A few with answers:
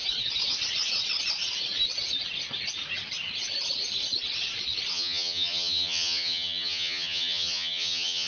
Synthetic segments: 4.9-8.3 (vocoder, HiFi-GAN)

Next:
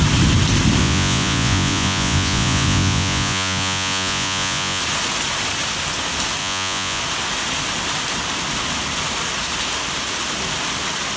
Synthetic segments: 0.8-4.8 (vocoder, Vocos); 6.4-7.0

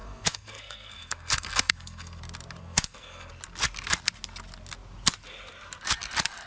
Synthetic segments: 0.0-2.2 (codec, SNAC); 2.6-3.3

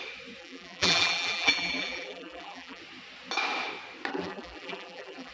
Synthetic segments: 0.4-2.8 (vocoder, BigVGAN v2); 4.1-5.3